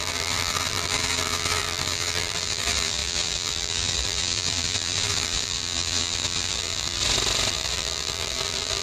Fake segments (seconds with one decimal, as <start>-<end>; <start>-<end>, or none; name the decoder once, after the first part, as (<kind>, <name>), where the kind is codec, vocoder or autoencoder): 0.0-7.0 (vocoder, BigVGAN v2); 7.5-8.8